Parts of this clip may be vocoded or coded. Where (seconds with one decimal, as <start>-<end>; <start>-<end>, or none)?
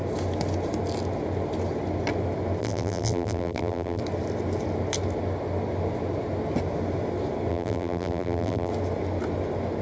2.6-4.0; 7.5-8.7